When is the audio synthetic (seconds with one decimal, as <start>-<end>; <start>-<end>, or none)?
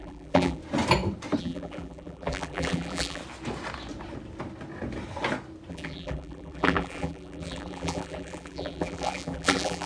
0.0-0.6; 1.4-3.2; 5.7-9.9